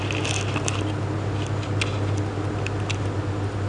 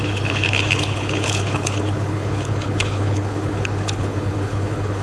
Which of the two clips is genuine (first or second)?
first